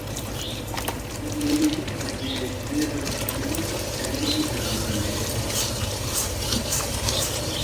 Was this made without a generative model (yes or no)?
no